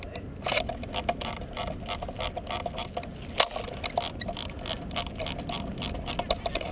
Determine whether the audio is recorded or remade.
recorded